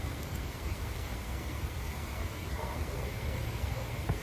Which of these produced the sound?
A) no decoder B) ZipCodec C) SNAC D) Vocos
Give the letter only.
C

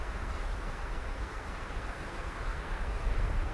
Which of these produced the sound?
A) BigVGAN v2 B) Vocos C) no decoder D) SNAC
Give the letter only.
D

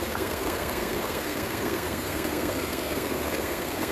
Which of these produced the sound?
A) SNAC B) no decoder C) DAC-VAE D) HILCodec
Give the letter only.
A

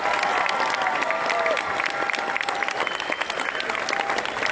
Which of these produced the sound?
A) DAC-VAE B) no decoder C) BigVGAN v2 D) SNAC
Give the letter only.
B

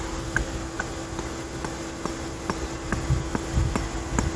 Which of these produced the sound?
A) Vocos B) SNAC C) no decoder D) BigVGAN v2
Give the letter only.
C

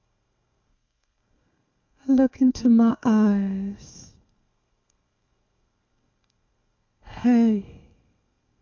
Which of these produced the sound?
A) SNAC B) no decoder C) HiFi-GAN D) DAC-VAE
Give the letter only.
A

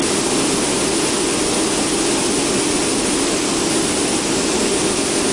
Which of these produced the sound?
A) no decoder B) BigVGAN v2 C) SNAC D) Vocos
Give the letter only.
A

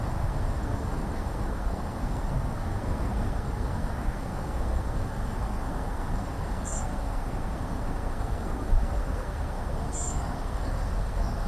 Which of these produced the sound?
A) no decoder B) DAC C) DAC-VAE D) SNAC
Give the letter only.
D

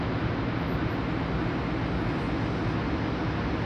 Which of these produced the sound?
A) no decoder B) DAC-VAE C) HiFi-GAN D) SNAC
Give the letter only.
A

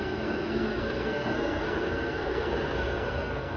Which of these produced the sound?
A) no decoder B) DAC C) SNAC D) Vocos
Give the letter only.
C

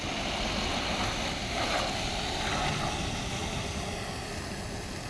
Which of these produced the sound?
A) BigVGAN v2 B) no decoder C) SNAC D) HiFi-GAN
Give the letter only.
B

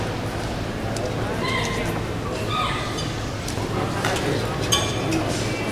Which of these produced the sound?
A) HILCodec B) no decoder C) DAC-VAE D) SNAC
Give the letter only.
B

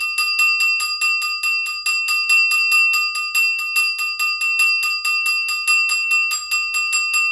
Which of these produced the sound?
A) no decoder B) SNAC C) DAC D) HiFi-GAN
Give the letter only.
A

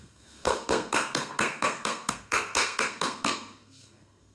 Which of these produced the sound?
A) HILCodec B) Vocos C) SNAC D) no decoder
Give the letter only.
C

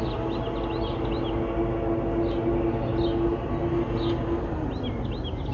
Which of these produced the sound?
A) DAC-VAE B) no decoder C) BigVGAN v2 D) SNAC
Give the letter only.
B